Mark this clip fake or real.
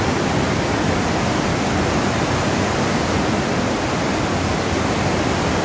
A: real